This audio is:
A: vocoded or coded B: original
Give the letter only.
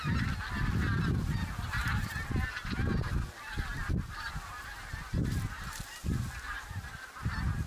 B